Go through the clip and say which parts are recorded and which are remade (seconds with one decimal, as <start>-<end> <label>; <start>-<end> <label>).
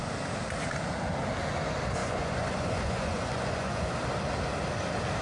0.0-2.0 recorded; 2.0-3.9 remade; 3.9-5.2 recorded